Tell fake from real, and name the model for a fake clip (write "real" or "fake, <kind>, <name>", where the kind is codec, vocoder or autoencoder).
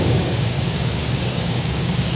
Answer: fake, codec, DAC